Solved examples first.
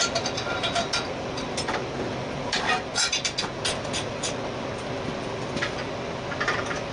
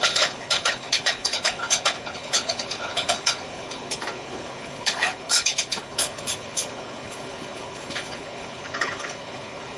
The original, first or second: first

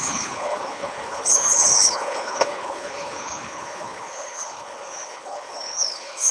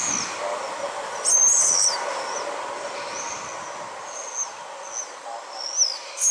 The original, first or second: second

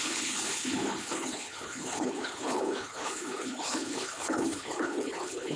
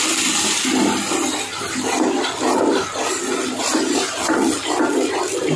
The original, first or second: second